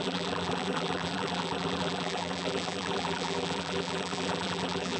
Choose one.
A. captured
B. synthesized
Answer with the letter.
B